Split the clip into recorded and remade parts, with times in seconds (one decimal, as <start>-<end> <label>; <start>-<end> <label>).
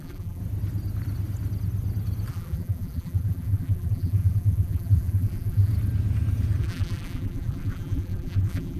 0.0-0.4 remade; 0.4-2.3 recorded; 2.3-5.7 remade; 5.7-6.6 recorded; 6.6-8.8 remade